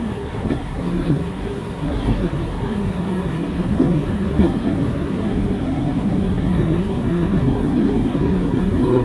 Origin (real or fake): fake